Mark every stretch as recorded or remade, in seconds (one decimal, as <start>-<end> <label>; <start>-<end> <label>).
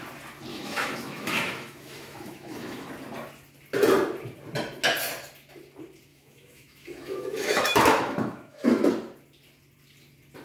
0.0-0.5 recorded; 0.5-2.9 remade; 2.9-6.1 recorded; 6.1-8.9 remade; 8.9-10.4 recorded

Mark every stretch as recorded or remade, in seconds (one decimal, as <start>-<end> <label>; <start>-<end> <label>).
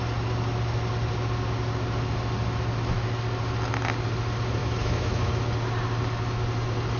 0.0-4.6 recorded; 4.6-5.3 remade; 5.3-7.0 recorded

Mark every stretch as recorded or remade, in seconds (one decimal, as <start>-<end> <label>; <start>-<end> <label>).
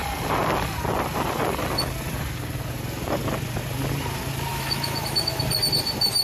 0.0-4.5 recorded; 4.5-5.4 remade; 5.4-6.2 recorded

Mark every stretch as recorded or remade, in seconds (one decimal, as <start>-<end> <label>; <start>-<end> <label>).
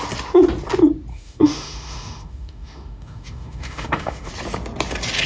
0.0-1.1 recorded; 1.1-4.3 remade; 4.3-5.3 recorded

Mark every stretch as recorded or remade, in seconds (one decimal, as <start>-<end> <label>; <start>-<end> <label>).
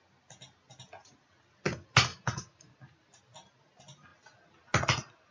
0.0-5.3 recorded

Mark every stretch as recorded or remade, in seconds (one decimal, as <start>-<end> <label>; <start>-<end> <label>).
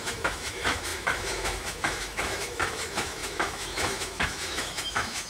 0.0-5.3 remade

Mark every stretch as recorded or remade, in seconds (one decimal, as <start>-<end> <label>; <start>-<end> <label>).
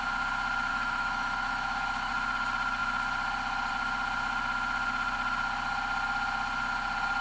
0.0-0.7 recorded; 0.7-2.1 remade; 2.1-7.2 recorded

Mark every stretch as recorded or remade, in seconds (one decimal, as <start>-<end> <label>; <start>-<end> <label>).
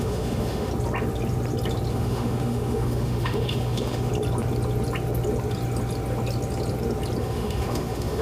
0.0-0.7 remade; 0.7-1.9 recorded; 1.9-4.1 remade; 4.1-7.2 recorded; 7.2-8.2 remade